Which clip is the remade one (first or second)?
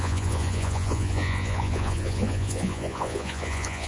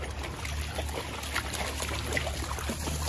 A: first